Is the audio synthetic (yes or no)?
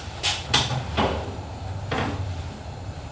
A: yes